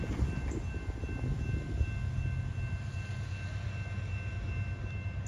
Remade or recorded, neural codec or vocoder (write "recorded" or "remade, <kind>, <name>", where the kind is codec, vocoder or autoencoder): recorded